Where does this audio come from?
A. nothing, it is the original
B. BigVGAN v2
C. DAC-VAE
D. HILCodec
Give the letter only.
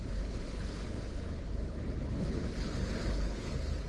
D